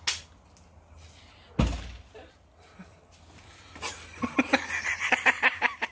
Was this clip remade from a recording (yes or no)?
no